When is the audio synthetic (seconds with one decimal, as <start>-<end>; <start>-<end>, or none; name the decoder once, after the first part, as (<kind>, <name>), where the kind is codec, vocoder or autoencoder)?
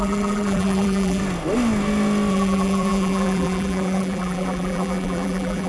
0.0-1.2 (vocoder, BigVGAN v2); 2.3-5.7